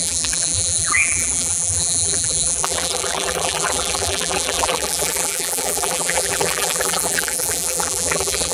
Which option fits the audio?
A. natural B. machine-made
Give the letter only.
B